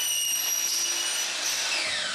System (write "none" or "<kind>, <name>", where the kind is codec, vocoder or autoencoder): none